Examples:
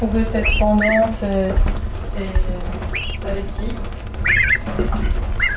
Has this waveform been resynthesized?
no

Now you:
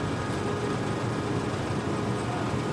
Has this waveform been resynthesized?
no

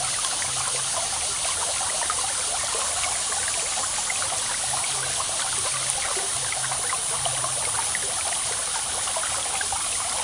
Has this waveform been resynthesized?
no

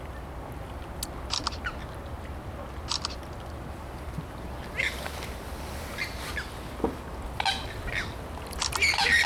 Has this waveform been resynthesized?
no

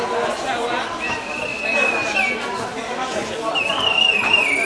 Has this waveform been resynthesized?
no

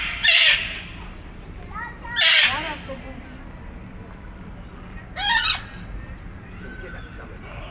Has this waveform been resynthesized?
no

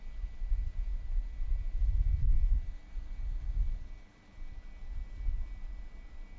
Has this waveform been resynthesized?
no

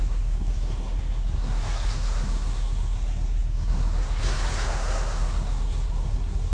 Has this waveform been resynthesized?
yes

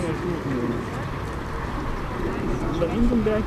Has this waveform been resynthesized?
no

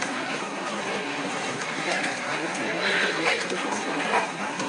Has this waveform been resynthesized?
yes